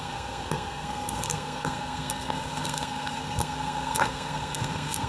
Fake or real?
fake